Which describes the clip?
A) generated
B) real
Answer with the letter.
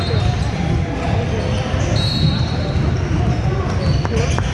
B